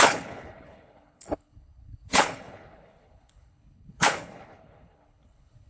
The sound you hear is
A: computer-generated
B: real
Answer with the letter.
A